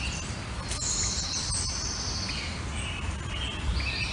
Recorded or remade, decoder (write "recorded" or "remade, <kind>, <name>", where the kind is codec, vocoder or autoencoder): recorded